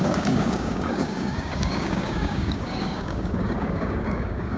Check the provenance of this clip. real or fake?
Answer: fake